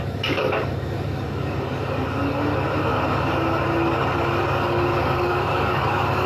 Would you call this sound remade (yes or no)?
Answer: yes